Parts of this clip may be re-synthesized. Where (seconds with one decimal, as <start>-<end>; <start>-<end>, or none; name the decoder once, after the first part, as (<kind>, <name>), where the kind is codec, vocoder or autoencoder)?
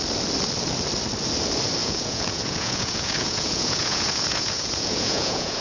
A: 1.8-5.6 (vocoder, Vocos)